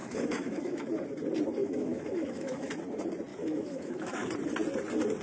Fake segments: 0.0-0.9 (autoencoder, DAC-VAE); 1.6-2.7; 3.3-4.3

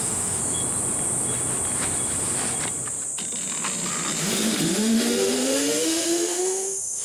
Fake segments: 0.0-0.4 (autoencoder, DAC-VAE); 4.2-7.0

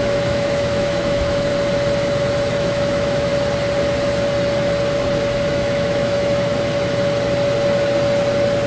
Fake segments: 0.0-1.5 (autoencoder, DAC-VAE); 2.5-3.3; 5.5-6.5

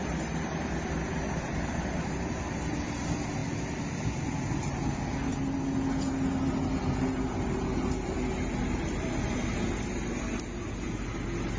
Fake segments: none